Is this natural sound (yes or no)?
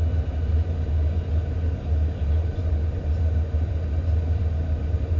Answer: yes